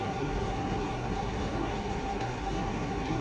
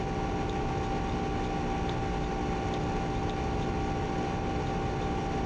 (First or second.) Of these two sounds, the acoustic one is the second